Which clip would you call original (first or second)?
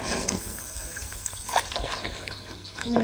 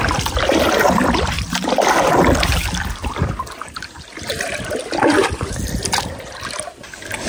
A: second